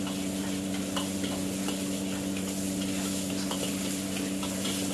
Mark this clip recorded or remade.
recorded